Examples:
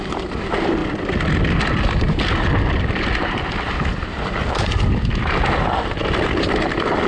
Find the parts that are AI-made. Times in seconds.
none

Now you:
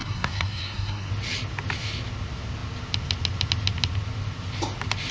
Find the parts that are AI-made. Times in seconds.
0.0-1.1 (codec, SNAC)

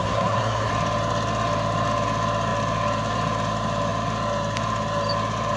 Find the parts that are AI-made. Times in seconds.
0.0-0.7 (codec, SNAC)

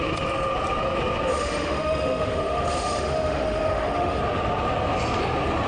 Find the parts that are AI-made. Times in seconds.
1.3-4.2 (autoencoder, DAC-VAE)

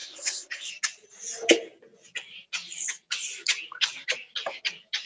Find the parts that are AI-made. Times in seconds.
0.0-0.7 (codec, HILCodec)

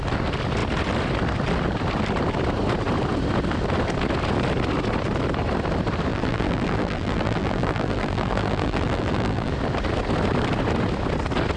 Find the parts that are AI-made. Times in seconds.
6.1-9.5 (vocoder, BigVGAN v2)

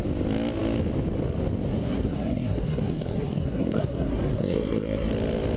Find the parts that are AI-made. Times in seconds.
1.7-5.1 (codec, SNAC)

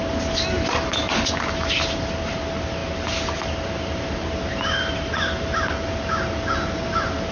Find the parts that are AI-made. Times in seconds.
none